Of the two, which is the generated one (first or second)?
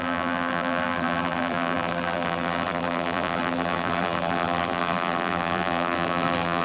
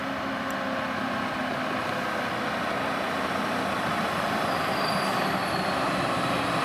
first